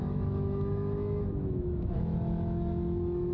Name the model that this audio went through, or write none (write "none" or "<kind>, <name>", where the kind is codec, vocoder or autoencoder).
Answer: autoencoder, DAC-VAE